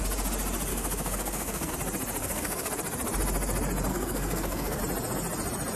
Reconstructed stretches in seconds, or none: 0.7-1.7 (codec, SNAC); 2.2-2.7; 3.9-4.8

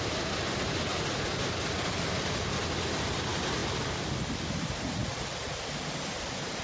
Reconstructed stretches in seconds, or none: none

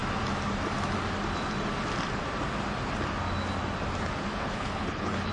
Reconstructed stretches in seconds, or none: 4.3-5.3 (codec, HILCodec)